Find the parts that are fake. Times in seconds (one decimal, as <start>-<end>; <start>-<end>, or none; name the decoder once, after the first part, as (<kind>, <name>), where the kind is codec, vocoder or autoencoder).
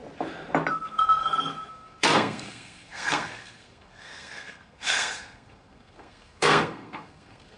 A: 0.7-7.6 (codec, SNAC)